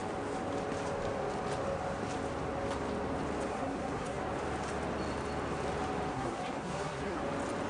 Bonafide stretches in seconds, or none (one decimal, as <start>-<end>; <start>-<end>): 0.0-3.5; 4.2-6.1; 7.2-7.7

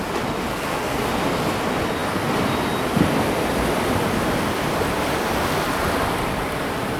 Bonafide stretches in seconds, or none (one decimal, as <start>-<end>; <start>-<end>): 0.0-0.5; 1.1-7.0

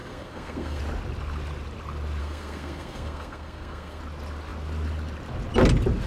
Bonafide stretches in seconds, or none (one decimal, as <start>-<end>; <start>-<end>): 0.8-2.2; 4.0-6.1

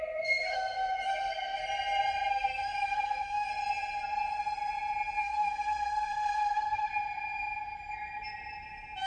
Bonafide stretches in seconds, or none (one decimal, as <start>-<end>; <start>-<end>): 1.6-2.3; 3.5-5.2; 6.9-9.1